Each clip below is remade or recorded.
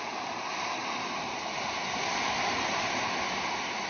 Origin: recorded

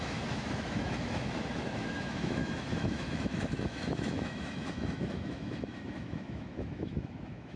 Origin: remade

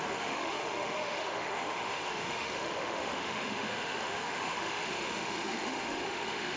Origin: remade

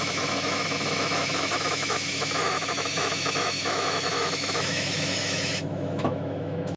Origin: remade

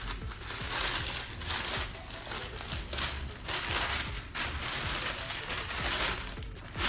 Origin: recorded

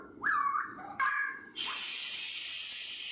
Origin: recorded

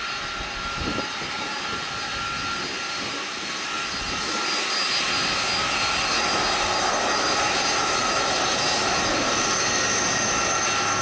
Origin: recorded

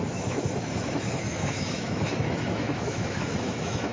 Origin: remade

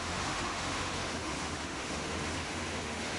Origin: remade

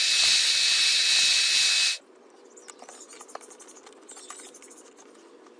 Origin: recorded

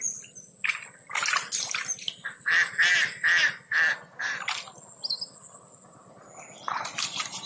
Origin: recorded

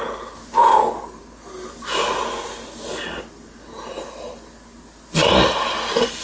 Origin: recorded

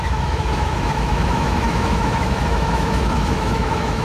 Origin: remade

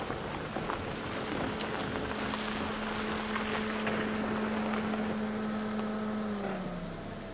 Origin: recorded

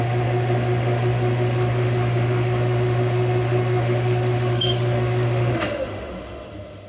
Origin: remade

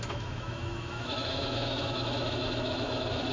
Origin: remade